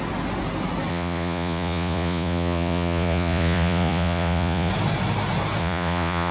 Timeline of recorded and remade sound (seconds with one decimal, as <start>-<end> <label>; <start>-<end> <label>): 0.0-0.9 recorded; 0.9-4.7 remade; 4.7-5.6 recorded; 5.6-6.3 remade